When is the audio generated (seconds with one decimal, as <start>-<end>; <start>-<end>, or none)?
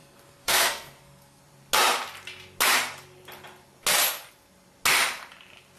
0.0-1.4